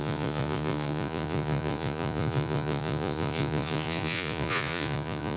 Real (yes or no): no